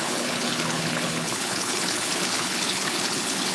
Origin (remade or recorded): remade